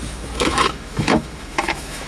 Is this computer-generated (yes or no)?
yes